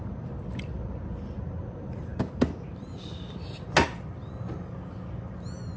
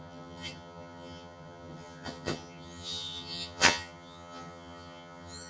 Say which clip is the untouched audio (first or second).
first